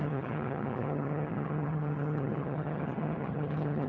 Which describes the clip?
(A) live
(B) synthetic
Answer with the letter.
B